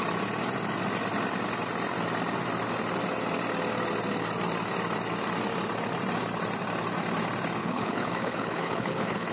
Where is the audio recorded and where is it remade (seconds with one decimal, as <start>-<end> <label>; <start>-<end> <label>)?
0.0-7.6 recorded; 7.6-9.3 remade